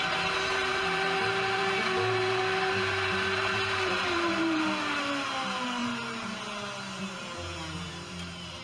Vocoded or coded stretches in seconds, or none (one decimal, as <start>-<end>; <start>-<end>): 0.0-5.8; 7.9-8.6

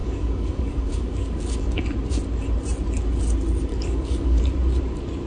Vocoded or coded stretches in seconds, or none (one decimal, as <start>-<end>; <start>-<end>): 0.0-1.7; 3.7-4.4

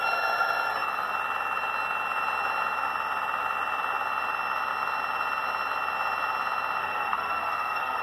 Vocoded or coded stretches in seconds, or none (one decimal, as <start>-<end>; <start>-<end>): 6.8-8.0

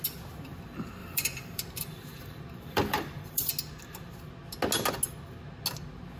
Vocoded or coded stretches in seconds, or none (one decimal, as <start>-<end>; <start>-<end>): 1.0-3.5

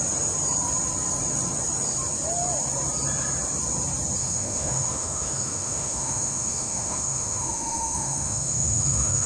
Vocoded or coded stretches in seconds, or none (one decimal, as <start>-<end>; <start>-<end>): 4.2-9.3

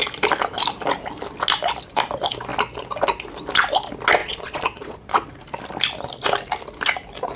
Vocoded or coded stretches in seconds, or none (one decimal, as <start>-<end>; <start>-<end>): 4.2-5.4

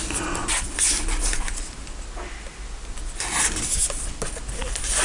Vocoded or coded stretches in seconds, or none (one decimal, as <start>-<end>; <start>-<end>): none

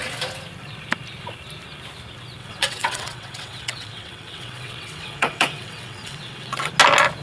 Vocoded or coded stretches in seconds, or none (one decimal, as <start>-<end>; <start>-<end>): 2.4-6.7